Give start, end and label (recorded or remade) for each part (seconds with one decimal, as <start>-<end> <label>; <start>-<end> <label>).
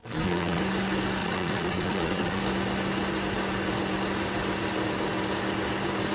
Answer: 0.0-0.6 remade; 0.6-1.2 recorded; 1.2-2.4 remade; 2.4-6.1 recorded